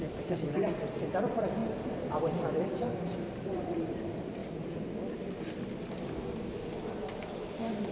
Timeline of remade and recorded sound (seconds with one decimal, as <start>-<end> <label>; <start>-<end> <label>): 0.0-4.4 remade; 4.4-7.3 recorded; 7.3-7.9 remade